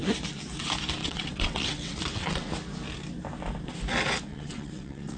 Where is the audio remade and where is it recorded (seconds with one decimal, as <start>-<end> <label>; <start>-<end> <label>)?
0.0-1.0 recorded; 1.0-2.5 remade; 2.5-4.3 recorded; 4.3-5.2 remade